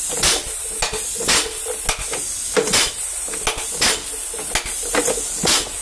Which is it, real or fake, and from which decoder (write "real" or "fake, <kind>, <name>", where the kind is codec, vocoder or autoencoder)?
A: real